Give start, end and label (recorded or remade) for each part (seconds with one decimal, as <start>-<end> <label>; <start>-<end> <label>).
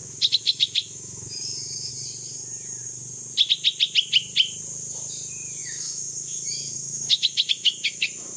0.0-1.9 remade; 1.9-5.6 recorded; 5.6-8.4 remade